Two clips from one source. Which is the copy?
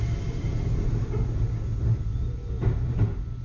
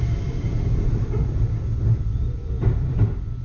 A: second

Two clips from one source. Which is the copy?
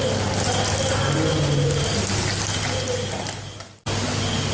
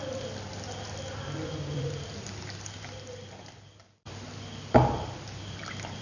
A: second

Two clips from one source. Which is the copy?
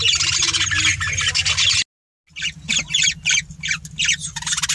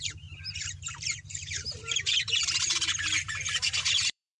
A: second